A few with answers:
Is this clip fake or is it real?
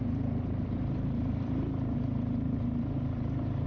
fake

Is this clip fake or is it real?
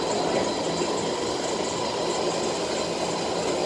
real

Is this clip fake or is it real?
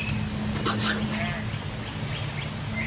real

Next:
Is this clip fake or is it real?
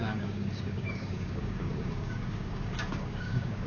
fake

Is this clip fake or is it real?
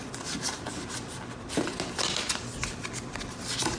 real